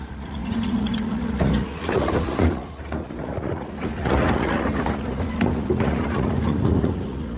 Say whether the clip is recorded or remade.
remade